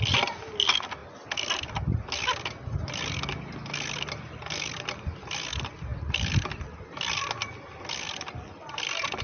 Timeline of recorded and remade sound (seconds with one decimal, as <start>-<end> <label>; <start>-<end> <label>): 0.0-9.2 recorded